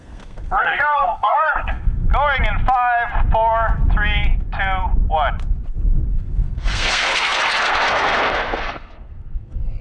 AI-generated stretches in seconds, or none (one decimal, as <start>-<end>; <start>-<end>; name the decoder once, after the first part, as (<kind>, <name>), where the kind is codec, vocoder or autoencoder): 0.0-2.1 (codec, SNAC); 6.1-9.8